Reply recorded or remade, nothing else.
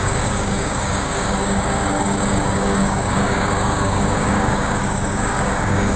remade